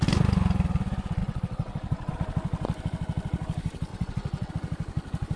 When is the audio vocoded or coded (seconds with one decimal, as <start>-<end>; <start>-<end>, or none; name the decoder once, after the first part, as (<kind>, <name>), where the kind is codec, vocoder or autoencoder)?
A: 1.2-2.1 (vocoder, WaveNeXt); 3.9-4.5